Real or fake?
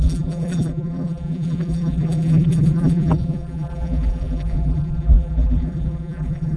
fake